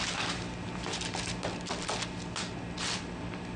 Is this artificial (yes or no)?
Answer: no